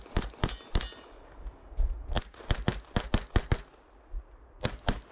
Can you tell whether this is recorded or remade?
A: recorded